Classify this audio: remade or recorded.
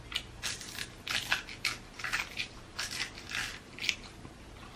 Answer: recorded